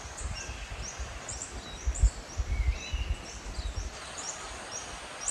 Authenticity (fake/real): real